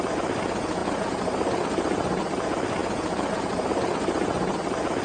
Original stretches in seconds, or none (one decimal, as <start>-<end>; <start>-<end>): 0.0-5.0

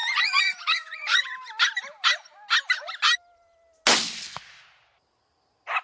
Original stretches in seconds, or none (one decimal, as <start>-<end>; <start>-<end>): 1.3-5.8

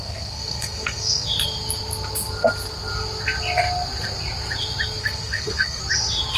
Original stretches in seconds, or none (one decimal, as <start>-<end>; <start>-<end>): 1.2-5.0; 5.8-6.4

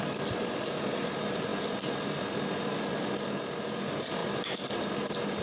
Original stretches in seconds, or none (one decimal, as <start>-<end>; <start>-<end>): 1.5-3.7; 4.2-5.4